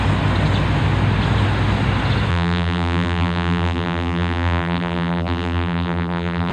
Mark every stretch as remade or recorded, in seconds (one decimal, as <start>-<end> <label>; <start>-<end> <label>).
0.0-2.3 recorded; 2.3-6.5 remade